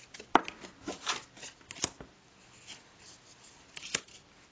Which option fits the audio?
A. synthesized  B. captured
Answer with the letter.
B